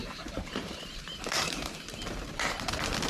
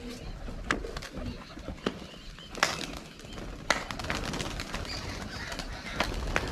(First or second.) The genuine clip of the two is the second